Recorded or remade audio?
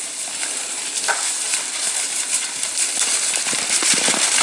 remade